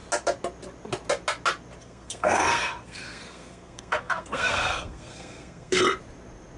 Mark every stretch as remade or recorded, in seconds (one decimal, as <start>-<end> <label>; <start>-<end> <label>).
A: 0.0-1.8 recorded; 1.8-5.8 remade; 5.8-6.6 recorded